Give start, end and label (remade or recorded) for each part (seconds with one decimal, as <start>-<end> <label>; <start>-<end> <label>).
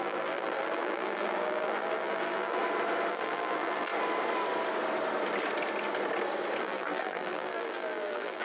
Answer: 0.0-2.6 remade; 2.6-3.1 recorded; 3.1-3.9 remade; 3.9-6.6 recorded; 6.6-8.4 remade